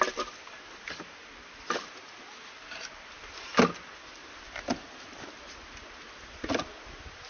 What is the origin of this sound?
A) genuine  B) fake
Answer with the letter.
A